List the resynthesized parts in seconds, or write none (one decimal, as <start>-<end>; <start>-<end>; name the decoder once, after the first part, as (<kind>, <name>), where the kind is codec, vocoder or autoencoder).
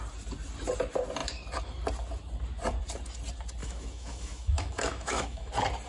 3.6-5.5 (autoencoder, DAC-VAE)